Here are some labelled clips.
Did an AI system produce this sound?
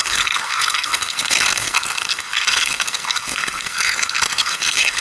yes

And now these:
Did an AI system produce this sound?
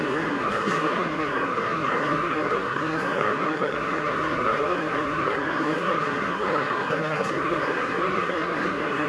yes